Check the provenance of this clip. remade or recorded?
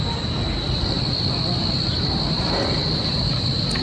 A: recorded